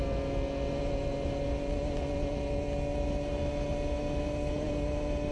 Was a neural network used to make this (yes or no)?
no